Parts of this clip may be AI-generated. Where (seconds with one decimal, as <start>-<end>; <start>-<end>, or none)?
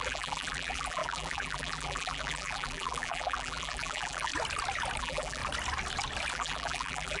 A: 0.0-4.3; 5.0-5.4; 6.3-7.2